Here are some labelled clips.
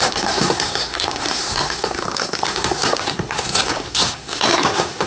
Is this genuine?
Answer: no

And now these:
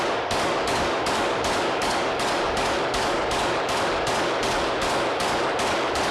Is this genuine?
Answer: no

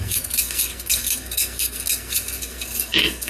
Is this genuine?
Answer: no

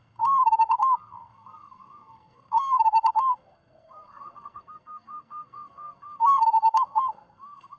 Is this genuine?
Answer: no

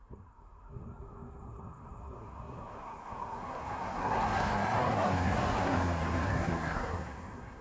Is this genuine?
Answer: no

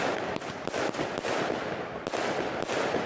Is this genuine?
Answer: yes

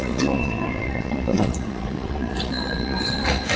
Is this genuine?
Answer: no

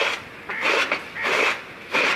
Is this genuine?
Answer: yes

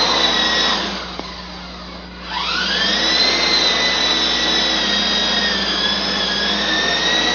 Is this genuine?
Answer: yes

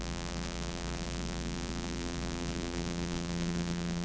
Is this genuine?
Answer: no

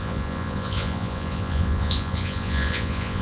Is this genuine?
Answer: no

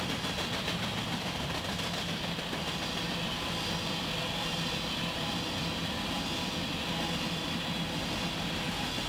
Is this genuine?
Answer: yes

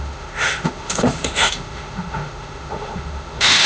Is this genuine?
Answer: no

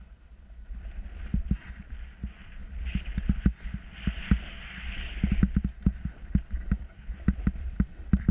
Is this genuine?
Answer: yes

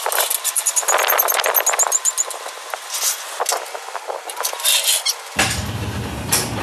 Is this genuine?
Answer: yes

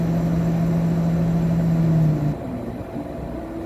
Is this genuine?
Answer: yes